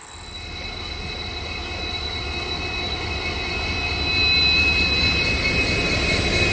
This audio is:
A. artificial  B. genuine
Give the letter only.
B